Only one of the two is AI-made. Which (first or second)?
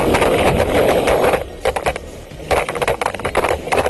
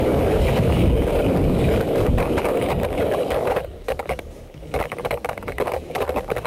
second